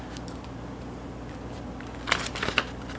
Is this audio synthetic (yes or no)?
no